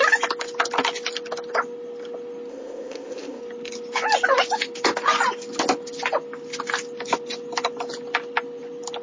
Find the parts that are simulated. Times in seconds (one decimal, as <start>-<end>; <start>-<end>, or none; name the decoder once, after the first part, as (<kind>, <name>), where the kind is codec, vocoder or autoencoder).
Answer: 2.5-3.4 (codec, ZipCodec)